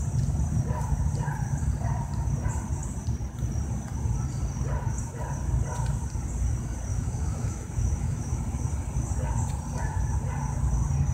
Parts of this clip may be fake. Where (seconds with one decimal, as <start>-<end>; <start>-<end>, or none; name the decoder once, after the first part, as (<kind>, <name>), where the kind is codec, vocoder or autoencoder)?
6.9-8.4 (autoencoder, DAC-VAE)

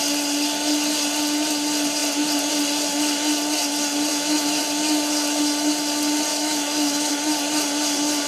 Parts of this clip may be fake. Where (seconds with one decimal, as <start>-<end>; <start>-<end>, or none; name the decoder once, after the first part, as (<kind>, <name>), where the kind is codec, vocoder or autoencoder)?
4.1-4.6 (autoencoder, DAC-VAE); 6.3-7.1

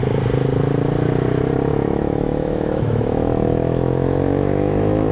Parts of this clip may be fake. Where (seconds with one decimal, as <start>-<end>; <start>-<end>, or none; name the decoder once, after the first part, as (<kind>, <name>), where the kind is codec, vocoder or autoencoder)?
1.7-5.1 (autoencoder, DAC-VAE)

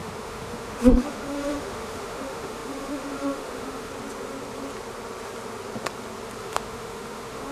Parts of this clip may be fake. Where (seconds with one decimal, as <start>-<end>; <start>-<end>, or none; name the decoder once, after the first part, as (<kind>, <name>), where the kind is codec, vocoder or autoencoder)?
0.0-3.9 (autoencoder, DAC-VAE); 6.4-7.5

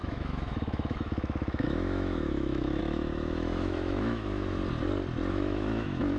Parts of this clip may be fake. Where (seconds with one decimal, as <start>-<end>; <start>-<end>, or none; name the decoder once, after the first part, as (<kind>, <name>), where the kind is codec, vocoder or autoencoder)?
0.0-4.6 (autoencoder, DAC-VAE); 5.3-6.2